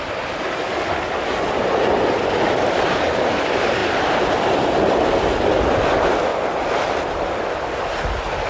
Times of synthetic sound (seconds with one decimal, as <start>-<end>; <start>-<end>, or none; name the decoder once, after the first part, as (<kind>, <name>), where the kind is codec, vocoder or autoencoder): 6.3-7.5 (vocoder, BigVGAN v2)